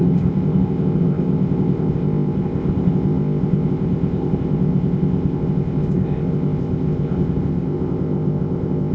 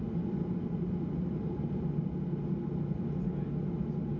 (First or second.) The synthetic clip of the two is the first